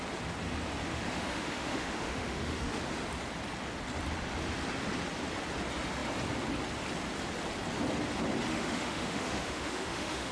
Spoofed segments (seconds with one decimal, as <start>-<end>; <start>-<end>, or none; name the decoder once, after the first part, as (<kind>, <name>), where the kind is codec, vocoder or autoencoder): 0.9-2.7 (autoencoder, DAC-VAE); 8.5-10.3